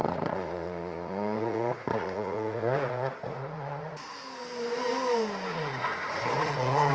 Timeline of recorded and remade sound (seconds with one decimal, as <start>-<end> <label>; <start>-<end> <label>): 0.0-4.1 remade; 4.1-5.5 recorded; 5.5-6.9 remade